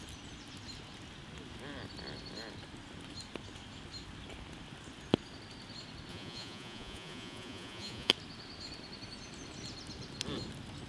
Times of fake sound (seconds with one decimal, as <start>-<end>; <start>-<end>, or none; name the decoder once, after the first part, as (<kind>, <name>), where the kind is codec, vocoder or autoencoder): 6.1-8.1 (vocoder, Vocos)